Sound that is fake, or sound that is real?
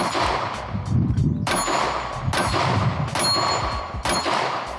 real